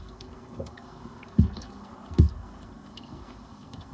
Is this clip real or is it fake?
fake